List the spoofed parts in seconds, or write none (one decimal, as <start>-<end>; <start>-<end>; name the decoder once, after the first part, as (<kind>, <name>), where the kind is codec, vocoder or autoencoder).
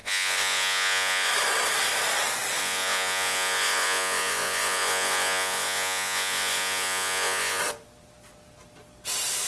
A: 0.0-1.3 (vocoder, Vocos); 2.6-7.6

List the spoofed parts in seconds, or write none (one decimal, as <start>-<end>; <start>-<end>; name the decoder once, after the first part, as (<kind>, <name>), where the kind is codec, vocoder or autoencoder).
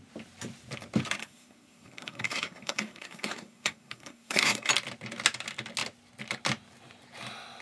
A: 1.2-4.7 (codec, SNAC)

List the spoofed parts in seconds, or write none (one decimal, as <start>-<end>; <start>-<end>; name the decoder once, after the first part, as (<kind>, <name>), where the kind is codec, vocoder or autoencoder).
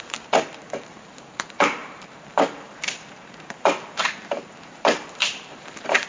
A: 0.0-6.1 (vocoder, BigVGAN v2)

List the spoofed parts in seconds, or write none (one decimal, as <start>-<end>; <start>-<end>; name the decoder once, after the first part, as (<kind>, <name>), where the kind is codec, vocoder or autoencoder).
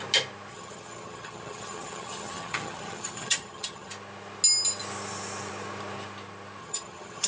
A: 0.5-3.9 (vocoder, HiFi-GAN); 6.6-7.3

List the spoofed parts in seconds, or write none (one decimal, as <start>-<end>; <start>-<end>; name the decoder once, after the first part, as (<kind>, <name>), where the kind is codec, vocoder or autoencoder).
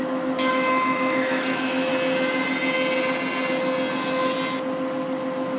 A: 0.0-1.9 (autoencoder, DAC-VAE)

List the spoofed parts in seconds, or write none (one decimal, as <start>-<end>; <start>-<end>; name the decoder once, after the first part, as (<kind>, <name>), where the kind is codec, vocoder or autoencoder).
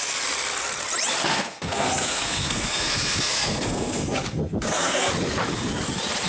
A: 1.3-5.1 (codec, SNAC)